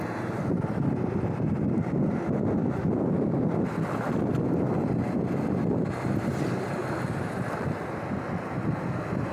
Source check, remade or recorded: recorded